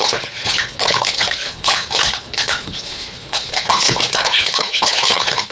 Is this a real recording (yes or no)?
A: no